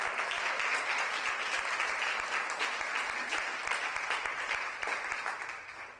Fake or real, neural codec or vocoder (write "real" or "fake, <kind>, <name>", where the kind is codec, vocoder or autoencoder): real